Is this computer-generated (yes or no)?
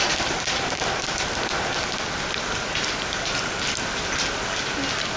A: no